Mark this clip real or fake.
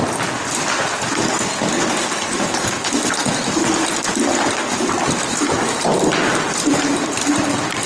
real